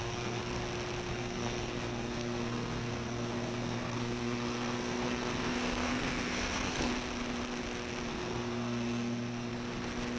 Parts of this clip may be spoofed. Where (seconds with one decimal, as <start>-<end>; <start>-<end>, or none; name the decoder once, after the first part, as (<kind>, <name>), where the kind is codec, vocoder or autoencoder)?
0.0-0.4 (codec, SNAC); 1.1-6.9; 8.1-9.5